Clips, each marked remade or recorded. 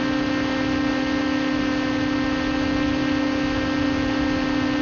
recorded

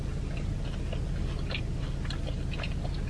recorded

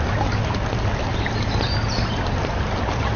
recorded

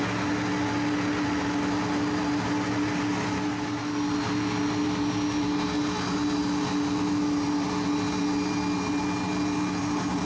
recorded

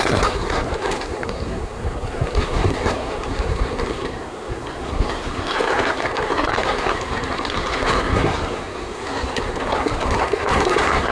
remade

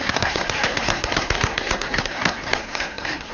remade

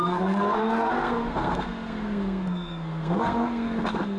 remade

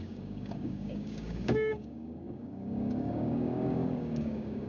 remade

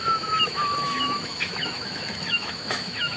remade